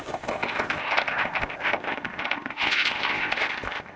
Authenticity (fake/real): fake